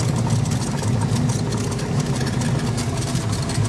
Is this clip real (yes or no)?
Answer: yes